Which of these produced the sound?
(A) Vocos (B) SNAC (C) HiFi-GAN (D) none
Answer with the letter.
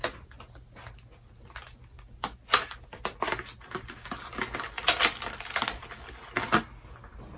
D